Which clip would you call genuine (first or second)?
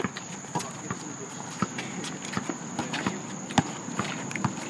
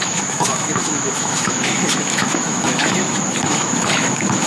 first